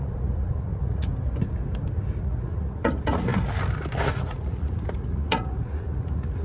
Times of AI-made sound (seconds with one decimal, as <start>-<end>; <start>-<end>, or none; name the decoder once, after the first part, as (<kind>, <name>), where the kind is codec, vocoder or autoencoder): 0.0-1.1 (vocoder, Vocos); 2.2-3.3; 4.0-6.4